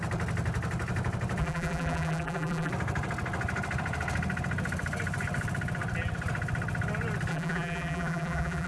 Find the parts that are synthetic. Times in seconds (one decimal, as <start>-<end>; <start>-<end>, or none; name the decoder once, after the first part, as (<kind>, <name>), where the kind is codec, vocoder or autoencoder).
1.4-2.7 (vocoder, BigVGAN v2); 7.3-8.7